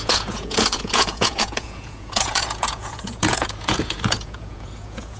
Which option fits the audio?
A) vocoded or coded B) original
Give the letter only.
A